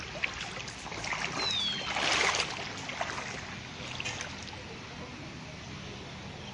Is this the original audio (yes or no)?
yes